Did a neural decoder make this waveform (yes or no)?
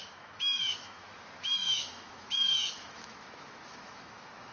yes